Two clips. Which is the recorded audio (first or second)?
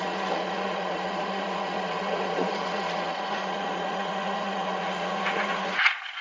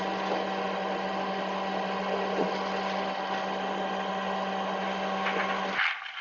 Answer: second